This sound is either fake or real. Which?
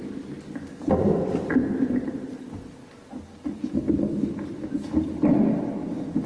real